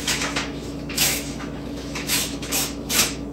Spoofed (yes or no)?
yes